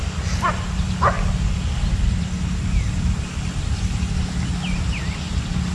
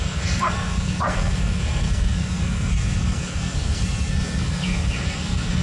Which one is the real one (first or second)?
first